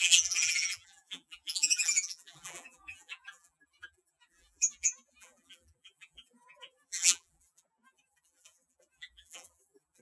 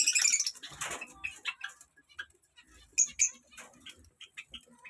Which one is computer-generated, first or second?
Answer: first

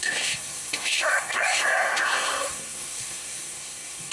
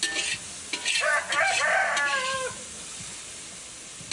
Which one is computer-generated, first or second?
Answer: first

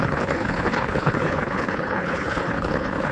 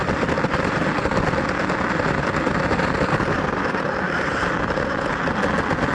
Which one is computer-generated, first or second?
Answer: first